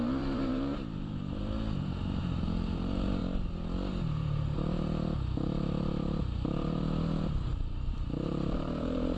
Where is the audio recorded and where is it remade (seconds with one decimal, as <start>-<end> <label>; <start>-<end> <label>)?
0.0-3.2 remade; 3.2-3.9 recorded; 3.9-9.2 remade